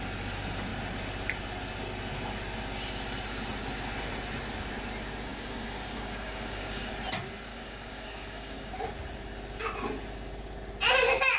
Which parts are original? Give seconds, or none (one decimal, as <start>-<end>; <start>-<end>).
0.0-5.3; 6.9-7.5; 8.7-11.4